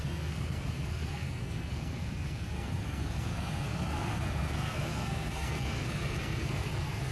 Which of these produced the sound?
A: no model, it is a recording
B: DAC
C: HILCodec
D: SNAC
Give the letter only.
D